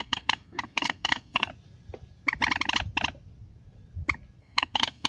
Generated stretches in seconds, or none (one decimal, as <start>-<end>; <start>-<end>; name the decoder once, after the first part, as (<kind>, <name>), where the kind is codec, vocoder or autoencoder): 0.0-1.5 (codec, SNAC); 4.4-5.1